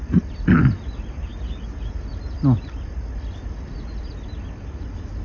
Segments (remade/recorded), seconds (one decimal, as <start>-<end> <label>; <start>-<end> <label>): 0.0-5.2 recorded

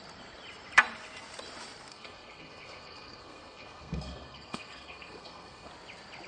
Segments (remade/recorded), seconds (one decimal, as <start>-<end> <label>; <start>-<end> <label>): 0.0-1.9 recorded; 1.9-5.7 remade; 5.7-6.3 recorded

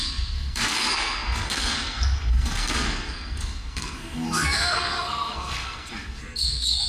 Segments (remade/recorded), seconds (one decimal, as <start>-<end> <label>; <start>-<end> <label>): 0.0-6.9 remade

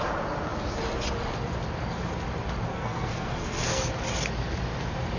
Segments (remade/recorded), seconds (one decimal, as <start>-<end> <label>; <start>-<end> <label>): 0.0-2.7 recorded; 2.7-3.9 remade; 3.9-5.2 recorded